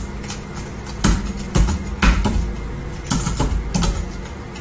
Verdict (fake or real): real